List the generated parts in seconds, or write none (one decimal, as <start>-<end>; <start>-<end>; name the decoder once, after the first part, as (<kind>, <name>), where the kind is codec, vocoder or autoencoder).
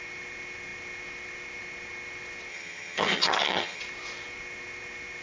2.5-3.8 (vocoder, HiFi-GAN)